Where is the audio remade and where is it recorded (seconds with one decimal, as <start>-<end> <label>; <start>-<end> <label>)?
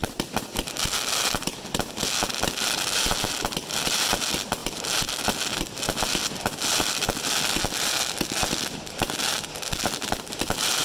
0.0-10.8 recorded